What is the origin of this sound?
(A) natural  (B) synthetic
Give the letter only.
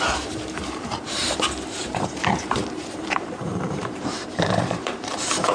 B